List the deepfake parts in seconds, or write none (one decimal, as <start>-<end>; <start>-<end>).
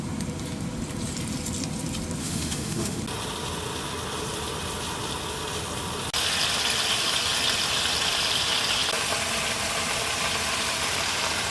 2.2-3.0